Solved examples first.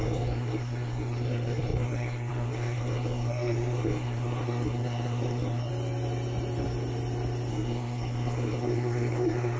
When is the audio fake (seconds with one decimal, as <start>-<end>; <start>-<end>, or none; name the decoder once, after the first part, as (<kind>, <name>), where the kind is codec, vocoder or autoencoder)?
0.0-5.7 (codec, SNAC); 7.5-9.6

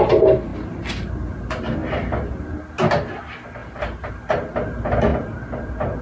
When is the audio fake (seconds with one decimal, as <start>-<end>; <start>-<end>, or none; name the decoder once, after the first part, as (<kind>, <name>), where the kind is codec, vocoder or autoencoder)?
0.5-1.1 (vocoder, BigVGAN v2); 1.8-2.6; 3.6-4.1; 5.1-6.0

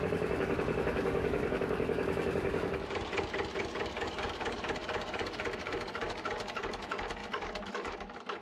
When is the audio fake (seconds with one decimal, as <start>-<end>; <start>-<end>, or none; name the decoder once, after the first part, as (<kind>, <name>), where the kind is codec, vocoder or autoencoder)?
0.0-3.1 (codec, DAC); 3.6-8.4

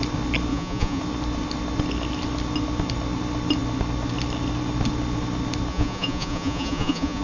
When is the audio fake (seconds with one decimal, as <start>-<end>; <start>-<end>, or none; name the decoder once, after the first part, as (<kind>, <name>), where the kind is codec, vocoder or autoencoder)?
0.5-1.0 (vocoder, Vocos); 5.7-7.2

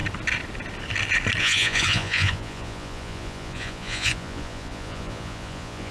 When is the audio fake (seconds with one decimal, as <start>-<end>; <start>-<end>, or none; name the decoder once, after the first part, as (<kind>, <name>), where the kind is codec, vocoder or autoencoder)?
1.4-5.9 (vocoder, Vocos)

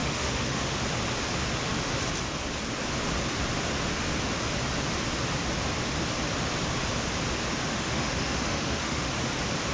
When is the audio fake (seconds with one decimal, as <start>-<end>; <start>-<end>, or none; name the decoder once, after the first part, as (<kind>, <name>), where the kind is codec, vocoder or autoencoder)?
0.0-0.8 (autoencoder, DAC-VAE); 7.7-9.1

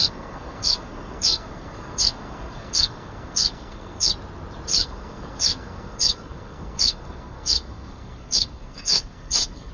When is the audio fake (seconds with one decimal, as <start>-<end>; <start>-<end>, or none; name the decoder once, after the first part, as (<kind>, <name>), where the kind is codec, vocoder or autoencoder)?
0.0-4.1 (codec, SNAC); 4.7-9.7